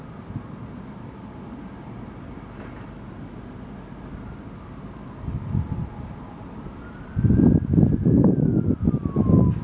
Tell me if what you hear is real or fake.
real